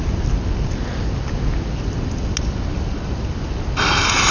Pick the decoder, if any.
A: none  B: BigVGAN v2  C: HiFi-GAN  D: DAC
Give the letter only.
A